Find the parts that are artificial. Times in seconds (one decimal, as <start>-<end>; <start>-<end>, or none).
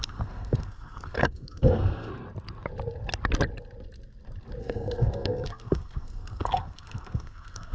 0.0-2.1; 4.6-7.7